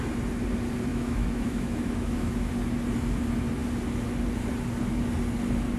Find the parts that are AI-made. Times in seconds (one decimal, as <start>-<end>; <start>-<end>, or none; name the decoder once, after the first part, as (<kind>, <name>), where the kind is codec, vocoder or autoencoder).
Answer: 0.9-2.5 (autoencoder, DAC-VAE)